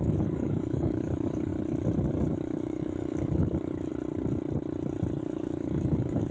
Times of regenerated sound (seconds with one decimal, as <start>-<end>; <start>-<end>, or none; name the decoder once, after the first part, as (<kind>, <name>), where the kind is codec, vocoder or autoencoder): 0.0-1.5 (codec, DAC); 2.3-3.9; 5.2-6.3